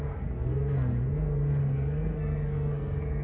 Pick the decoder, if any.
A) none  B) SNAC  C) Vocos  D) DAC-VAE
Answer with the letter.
B